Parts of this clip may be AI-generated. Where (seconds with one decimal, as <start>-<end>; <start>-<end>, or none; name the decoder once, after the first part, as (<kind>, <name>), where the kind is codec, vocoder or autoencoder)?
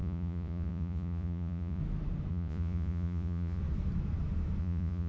0.0-1.8 (vocoder, Vocos); 2.3-3.6; 4.6-5.1